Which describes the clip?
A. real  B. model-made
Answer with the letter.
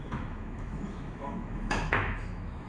B